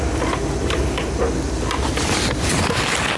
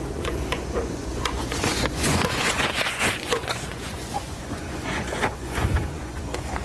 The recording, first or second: first